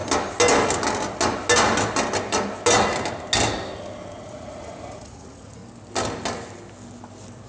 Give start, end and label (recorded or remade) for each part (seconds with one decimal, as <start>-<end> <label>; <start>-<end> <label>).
0.0-4.2 recorded; 4.2-5.6 remade; 5.6-7.5 recorded